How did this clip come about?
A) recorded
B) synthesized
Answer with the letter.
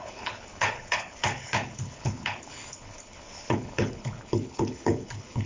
B